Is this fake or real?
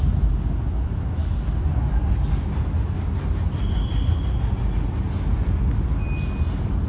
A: real